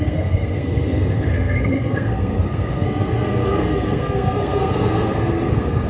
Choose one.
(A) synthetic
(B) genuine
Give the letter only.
A